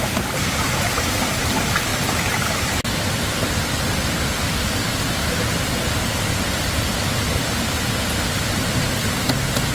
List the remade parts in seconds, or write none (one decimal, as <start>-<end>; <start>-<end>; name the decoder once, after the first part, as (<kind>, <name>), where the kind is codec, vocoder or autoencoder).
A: none